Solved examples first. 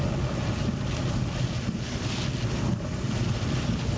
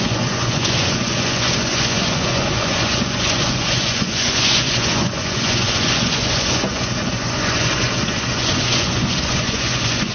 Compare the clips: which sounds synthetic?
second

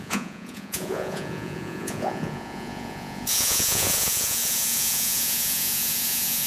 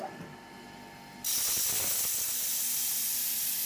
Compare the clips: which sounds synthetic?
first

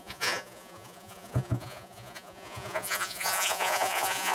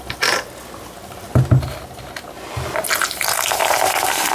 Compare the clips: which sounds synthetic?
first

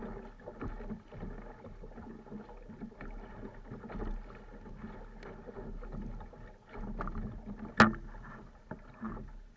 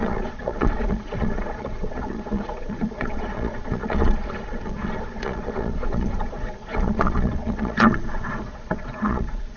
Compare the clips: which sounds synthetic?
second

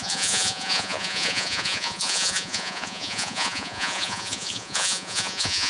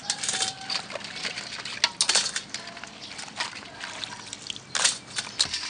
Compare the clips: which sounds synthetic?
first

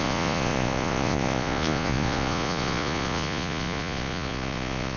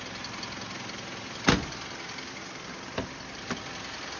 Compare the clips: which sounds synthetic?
first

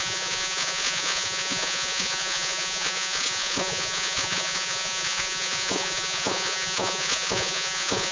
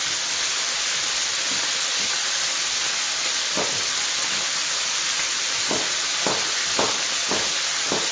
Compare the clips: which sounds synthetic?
first